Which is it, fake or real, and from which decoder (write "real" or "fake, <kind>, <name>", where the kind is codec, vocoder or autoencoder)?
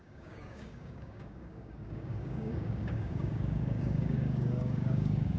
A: fake, codec, DAC